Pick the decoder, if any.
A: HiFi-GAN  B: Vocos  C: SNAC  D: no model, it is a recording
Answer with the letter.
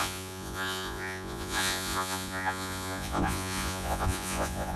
B